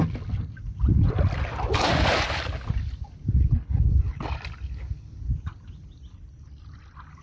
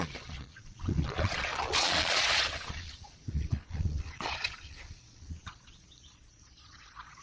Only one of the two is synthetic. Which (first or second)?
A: second